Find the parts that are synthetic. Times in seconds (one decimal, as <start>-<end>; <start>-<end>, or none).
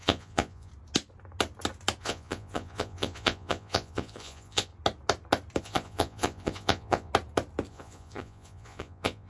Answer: 0.0-0.7; 2.0-4.7; 5.6-7.1; 7.7-9.3